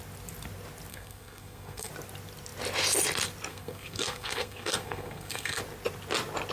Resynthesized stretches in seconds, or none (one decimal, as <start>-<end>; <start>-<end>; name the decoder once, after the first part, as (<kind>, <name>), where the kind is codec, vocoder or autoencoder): 0.9-1.9 (codec, SNAC); 3.5-5.6